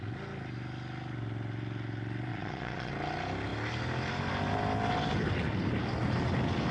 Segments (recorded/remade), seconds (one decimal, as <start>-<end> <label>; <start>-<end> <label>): 0.0-2.3 recorded; 2.3-2.9 remade; 2.9-6.7 recorded